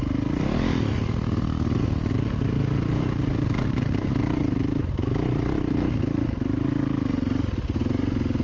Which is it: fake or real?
real